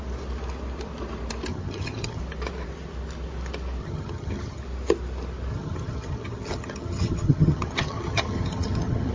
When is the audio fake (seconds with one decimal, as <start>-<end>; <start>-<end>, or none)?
1.5-2.2; 3.8-4.6; 5.5-9.1